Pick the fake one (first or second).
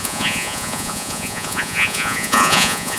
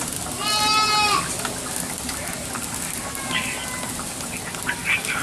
first